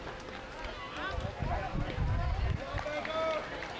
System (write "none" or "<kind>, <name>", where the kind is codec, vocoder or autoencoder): none